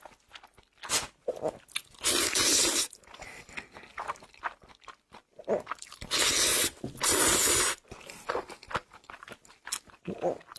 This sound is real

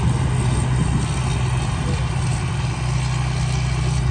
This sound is real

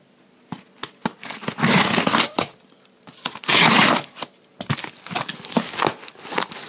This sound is real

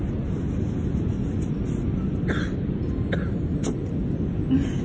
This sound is real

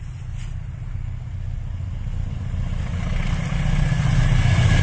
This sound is real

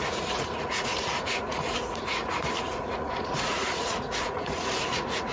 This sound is fake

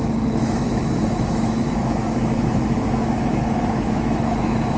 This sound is fake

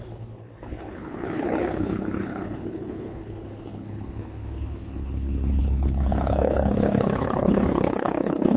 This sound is fake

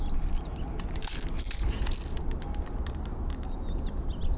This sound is real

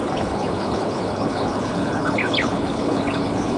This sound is fake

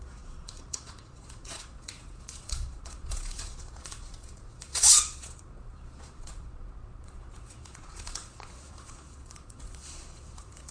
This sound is fake